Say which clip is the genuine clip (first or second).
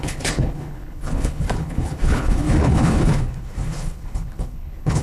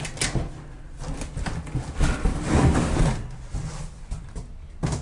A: second